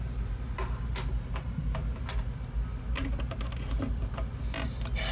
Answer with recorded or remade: recorded